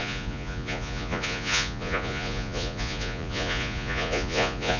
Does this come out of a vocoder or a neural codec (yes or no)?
yes